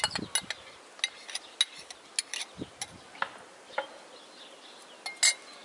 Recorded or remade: recorded